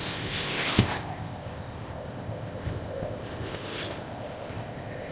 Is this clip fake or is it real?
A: fake